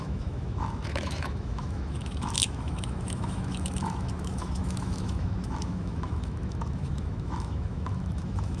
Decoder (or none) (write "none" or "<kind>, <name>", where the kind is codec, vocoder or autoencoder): autoencoder, DAC-VAE